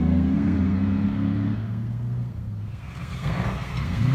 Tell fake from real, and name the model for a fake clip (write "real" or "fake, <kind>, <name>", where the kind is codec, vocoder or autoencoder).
fake, codec, SNAC